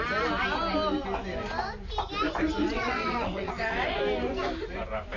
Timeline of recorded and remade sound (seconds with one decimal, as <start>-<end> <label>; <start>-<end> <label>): 0.0-2.6 recorded; 2.6-4.0 remade; 4.0-5.2 recorded